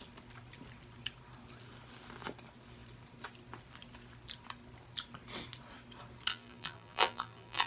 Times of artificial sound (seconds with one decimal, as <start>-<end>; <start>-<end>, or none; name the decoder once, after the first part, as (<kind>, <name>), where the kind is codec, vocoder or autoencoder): 6.3-7.7 (vocoder, BigVGAN v2)